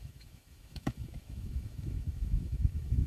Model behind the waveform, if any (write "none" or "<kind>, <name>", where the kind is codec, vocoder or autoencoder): autoencoder, DAC-VAE